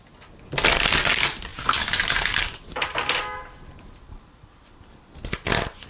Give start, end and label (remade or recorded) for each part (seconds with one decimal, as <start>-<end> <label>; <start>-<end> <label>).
0.0-1.5 recorded; 1.5-5.0 remade; 5.0-5.9 recorded